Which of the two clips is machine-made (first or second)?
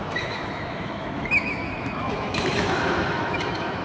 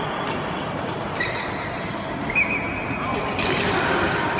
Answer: first